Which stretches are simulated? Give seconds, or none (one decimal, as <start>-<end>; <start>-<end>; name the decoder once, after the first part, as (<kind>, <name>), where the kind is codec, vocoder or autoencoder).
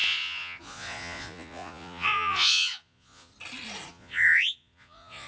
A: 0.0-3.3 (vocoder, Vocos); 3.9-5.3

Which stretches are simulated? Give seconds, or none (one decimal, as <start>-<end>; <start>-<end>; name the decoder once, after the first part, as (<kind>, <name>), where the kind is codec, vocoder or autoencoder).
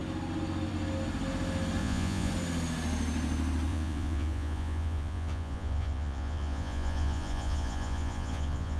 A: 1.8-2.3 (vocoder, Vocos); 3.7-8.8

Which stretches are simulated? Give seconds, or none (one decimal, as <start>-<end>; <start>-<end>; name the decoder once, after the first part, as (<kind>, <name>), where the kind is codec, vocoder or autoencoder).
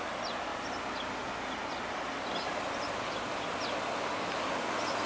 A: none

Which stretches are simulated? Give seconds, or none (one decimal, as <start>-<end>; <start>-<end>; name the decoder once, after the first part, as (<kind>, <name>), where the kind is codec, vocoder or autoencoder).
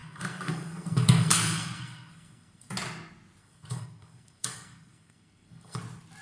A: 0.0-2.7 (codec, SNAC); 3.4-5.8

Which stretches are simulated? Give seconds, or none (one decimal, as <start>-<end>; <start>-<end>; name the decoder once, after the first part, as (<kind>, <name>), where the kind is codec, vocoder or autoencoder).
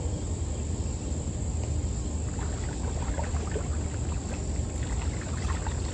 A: none